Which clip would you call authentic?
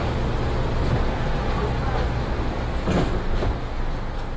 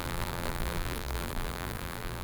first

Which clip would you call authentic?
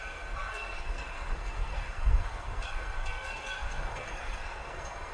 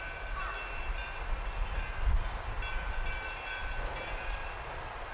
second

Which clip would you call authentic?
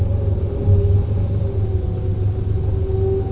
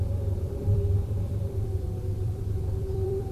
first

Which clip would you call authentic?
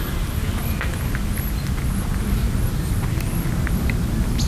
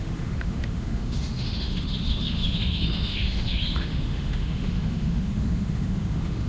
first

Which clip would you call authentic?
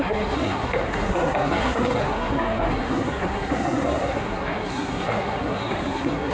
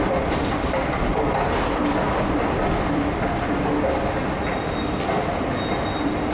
second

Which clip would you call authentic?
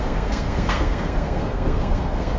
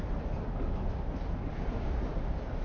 second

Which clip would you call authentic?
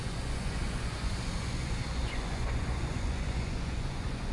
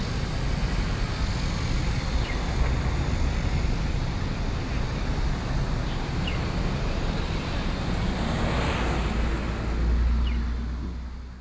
second